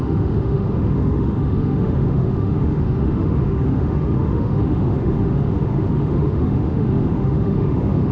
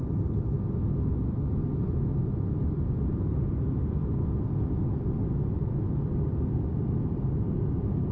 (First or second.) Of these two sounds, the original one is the second